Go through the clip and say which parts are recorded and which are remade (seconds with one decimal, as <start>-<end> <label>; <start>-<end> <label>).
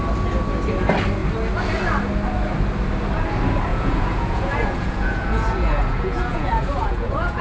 0.0-3.7 recorded; 3.7-7.4 remade